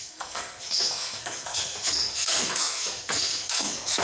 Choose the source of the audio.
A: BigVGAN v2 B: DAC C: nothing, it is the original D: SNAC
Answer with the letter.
D